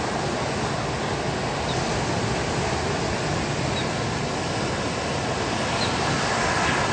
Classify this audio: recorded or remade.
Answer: recorded